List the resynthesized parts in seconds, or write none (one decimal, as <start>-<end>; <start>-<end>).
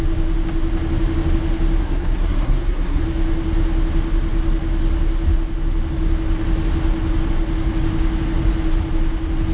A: 1.8-3.0